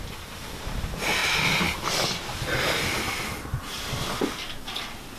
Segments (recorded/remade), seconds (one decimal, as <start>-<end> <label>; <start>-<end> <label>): 0.0-5.2 recorded

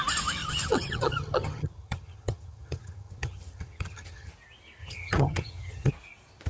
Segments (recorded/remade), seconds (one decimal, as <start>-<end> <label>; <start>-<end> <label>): 0.0-0.4 recorded; 0.4-4.3 remade; 4.3-4.8 recorded; 4.8-5.9 remade; 5.9-6.5 recorded

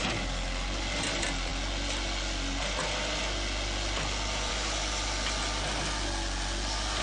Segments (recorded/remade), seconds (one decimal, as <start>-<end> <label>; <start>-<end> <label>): 0.0-7.0 recorded

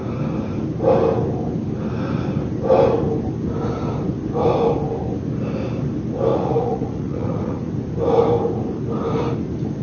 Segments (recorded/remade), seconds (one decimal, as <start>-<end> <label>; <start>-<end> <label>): 0.0-6.3 recorded; 6.3-7.7 remade; 7.7-9.8 recorded

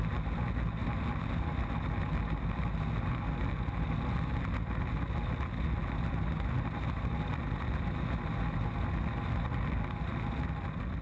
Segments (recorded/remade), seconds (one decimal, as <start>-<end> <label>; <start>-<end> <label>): 0.0-11.0 recorded